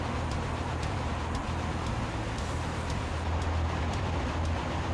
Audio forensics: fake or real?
real